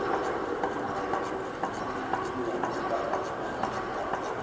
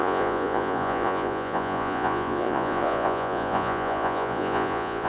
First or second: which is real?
first